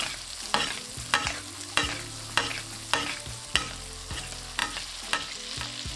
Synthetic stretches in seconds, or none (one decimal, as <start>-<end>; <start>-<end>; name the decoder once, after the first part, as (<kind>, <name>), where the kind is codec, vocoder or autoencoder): none